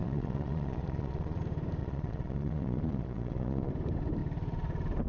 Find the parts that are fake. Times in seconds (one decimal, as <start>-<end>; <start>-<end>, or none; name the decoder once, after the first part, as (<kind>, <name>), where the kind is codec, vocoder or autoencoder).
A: 0.0-1.4 (vocoder, Vocos); 1.8-3.7